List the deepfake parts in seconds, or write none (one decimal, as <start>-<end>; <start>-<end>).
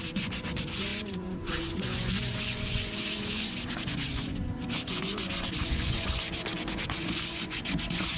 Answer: 0.0-8.2